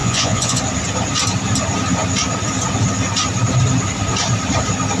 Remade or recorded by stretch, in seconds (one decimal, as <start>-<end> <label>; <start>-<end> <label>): 0.0-0.6 remade; 0.6-5.0 recorded